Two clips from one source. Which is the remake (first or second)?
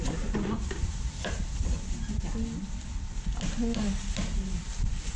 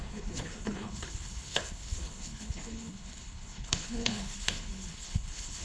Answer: second